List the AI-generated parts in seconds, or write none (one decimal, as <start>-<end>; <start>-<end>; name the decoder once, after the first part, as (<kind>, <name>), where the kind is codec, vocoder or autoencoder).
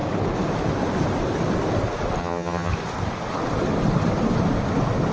2.2-2.7 (vocoder, HiFi-GAN)